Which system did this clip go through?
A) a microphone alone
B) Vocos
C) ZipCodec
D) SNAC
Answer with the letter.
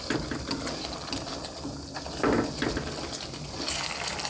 A